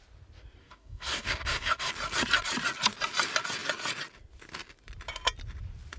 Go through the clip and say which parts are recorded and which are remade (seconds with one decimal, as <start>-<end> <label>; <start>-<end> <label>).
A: 0.0-0.6 recorded; 0.6-1.9 remade; 1.9-6.0 recorded